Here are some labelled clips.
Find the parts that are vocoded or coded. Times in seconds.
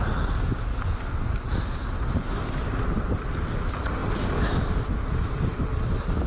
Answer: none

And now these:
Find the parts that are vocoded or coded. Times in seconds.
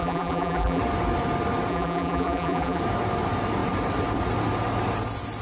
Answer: 0.0-0.8 (vocoder, BigVGAN v2); 1.7-2.8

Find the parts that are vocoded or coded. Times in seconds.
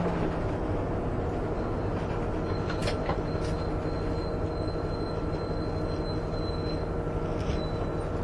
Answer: none